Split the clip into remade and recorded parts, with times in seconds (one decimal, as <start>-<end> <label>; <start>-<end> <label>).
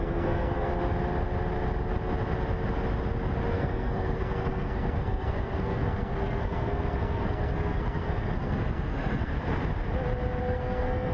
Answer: 0.0-0.7 remade; 0.7-3.5 recorded; 3.5-9.3 remade; 9.3-10.4 recorded; 10.4-11.1 remade